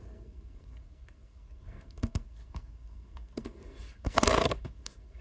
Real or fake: fake